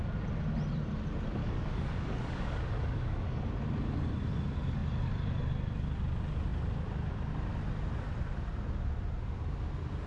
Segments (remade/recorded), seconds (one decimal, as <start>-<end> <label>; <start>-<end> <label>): 0.0-1.4 recorded; 1.4-3.4 remade; 3.4-10.1 recorded